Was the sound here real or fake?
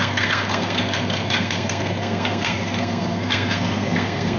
fake